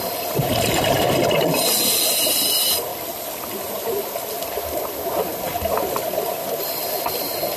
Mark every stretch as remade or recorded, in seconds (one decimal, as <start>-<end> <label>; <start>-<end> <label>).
0.0-2.9 recorded; 2.9-3.4 remade; 3.4-7.6 recorded